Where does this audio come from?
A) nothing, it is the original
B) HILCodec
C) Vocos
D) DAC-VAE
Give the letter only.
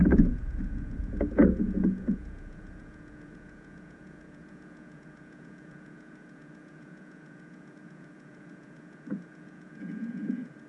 C